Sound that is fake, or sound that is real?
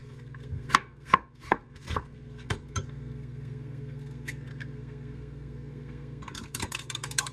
fake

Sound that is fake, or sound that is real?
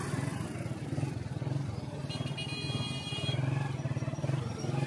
real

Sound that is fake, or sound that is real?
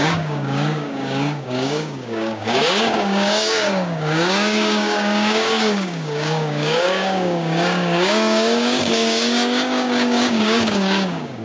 fake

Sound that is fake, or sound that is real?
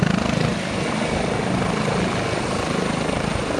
real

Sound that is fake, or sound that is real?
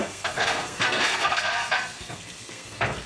fake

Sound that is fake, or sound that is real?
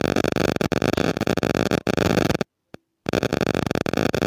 real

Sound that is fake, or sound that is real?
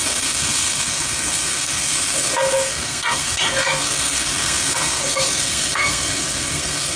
fake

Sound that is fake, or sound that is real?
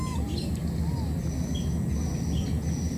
real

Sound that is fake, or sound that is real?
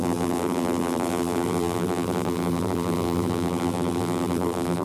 fake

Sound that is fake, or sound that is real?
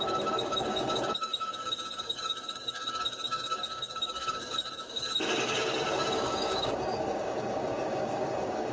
fake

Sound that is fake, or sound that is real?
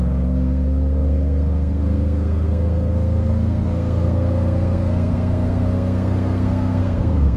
fake